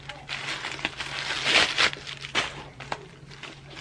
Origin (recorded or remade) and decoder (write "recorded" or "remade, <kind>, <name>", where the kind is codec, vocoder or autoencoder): recorded